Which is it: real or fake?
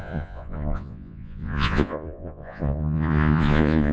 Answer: fake